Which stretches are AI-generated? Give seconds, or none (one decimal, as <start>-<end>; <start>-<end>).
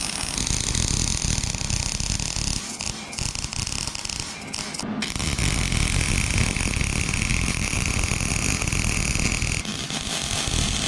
7.3-7.9